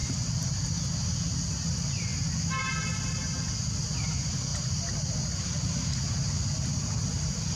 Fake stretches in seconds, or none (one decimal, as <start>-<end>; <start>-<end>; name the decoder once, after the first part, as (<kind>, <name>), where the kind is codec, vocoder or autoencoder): none